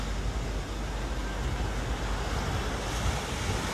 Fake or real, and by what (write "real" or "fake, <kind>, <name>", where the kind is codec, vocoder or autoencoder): real